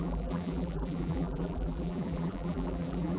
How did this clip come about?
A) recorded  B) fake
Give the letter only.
B